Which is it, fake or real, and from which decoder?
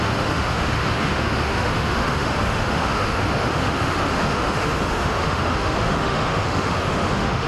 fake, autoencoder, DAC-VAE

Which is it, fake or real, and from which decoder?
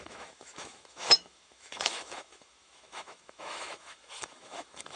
fake, autoencoder, DAC-VAE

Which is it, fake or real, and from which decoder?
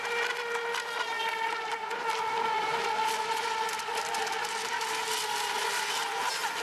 real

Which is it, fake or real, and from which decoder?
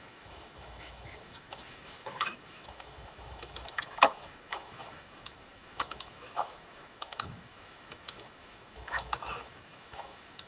fake, autoencoder, DAC-VAE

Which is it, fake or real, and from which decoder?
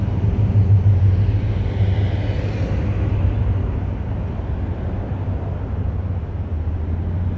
real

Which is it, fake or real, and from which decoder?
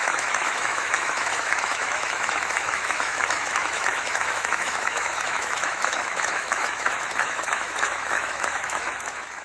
fake, autoencoder, DAC-VAE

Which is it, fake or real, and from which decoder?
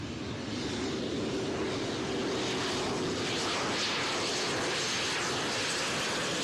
real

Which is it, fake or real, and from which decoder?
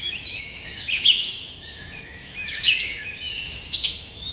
fake, autoencoder, DAC-VAE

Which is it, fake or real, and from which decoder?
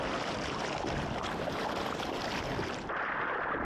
real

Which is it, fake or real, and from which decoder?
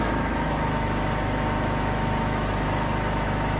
fake, autoencoder, DAC-VAE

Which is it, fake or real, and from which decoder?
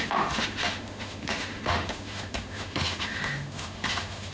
fake, autoencoder, DAC-VAE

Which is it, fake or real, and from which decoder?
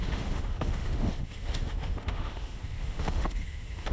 fake, autoencoder, DAC-VAE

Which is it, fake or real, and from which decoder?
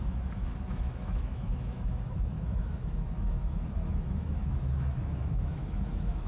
fake, autoencoder, DAC-VAE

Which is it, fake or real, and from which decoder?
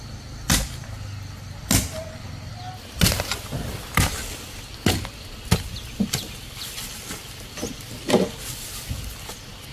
real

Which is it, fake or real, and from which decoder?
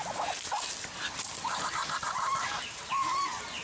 real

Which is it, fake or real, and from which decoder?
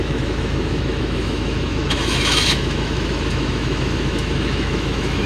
fake, autoencoder, DAC-VAE